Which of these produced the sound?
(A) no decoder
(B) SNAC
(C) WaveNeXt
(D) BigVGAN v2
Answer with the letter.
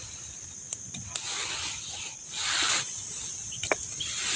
A